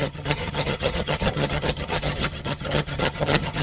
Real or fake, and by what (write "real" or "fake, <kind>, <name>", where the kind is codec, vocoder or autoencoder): fake, vocoder, HiFi-GAN